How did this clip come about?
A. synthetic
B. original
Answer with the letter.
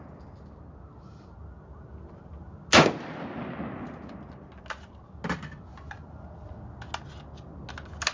B